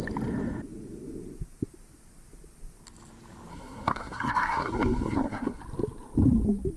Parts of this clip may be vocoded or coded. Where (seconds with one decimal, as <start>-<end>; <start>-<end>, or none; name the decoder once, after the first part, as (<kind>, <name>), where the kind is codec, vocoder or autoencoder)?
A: 3.5-5.6 (codec, SNAC)